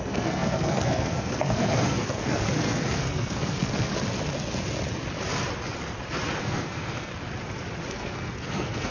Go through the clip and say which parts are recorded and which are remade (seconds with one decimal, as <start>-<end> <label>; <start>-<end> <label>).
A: 0.0-3.9 remade; 3.9-6.4 recorded; 6.4-7.1 remade; 7.1-7.9 recorded; 7.9-8.9 remade